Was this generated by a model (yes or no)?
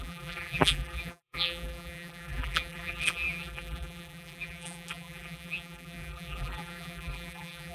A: yes